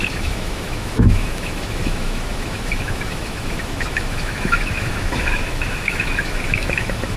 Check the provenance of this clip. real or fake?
fake